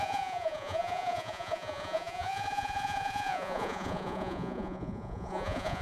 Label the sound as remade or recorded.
remade